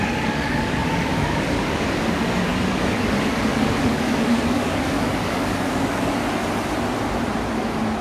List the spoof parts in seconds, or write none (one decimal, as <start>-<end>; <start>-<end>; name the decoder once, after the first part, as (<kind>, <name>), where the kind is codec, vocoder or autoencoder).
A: 0.0-6.2 (codec, DAC)